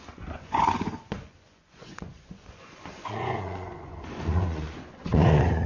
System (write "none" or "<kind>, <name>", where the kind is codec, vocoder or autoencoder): vocoder, Vocos